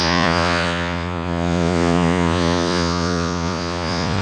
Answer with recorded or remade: remade